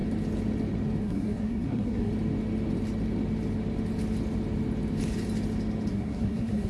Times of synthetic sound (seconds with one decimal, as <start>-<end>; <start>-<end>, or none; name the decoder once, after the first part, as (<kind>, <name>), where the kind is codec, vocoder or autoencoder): 1.0-2.1 (codec, SNAC); 5.9-6.7